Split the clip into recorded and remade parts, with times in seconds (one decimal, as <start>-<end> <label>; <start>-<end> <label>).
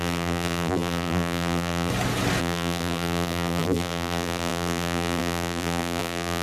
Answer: 0.0-1.9 remade; 1.9-2.4 recorded; 2.4-6.4 remade